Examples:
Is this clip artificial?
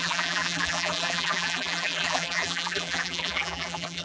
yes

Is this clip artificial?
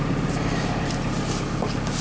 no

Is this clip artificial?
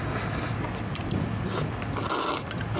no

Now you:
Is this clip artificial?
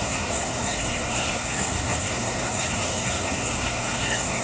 yes